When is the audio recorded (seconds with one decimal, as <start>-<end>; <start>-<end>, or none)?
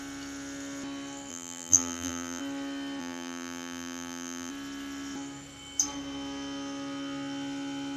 0.0-1.3; 2.4-3.0; 4.5-8.0